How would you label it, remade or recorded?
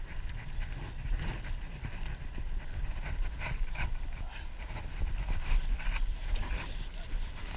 recorded